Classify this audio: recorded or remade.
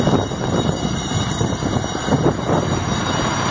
recorded